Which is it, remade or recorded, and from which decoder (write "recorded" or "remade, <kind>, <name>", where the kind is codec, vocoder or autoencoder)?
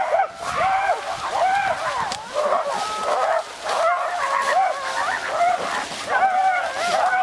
recorded